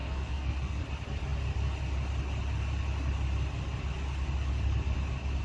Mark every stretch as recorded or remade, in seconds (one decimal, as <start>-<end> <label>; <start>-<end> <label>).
0.0-0.8 remade; 0.8-5.4 recorded